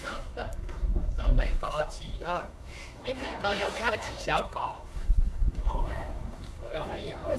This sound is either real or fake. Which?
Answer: fake